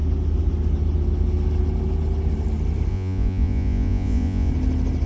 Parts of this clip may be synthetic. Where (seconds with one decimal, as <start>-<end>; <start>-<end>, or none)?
2.9-4.5